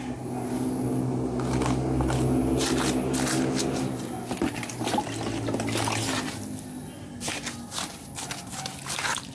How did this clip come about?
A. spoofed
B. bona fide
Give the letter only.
B